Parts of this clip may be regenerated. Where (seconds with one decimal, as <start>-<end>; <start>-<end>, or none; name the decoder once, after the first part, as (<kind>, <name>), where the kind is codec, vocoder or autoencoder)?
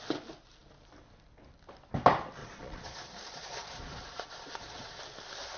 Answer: 2.4-5.0 (vocoder, Vocos)